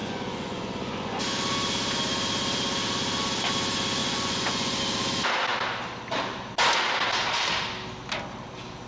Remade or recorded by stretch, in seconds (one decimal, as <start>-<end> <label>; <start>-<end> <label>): 0.0-1.2 remade; 1.2-4.0 recorded; 4.0-4.8 remade; 4.8-8.9 recorded